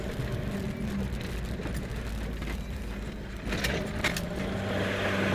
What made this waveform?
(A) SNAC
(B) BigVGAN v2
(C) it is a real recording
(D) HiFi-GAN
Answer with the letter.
C